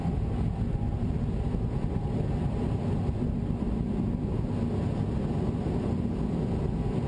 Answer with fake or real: real